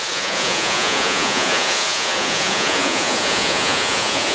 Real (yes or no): no